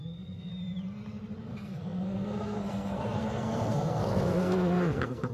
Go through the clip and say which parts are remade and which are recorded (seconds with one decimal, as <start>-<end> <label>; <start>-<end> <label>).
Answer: 0.0-0.5 remade; 0.5-1.4 recorded; 1.4-5.3 remade